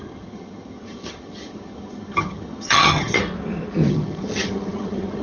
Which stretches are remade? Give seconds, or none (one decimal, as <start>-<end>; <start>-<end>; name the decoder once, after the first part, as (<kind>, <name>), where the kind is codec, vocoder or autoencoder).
0.0-3.2 (vocoder, HiFi-GAN); 3.9-5.2